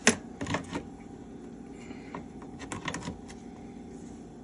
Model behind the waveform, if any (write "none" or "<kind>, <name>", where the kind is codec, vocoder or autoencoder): none